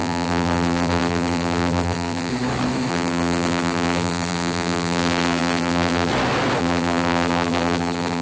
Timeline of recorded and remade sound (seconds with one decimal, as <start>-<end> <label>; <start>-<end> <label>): 0.0-2.3 remade; 2.3-2.9 recorded; 2.9-6.1 remade; 6.1-6.6 recorded; 6.6-8.2 remade